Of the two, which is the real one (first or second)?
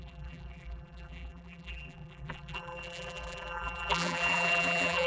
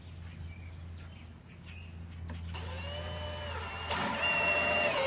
second